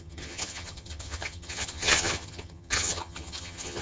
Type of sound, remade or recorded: remade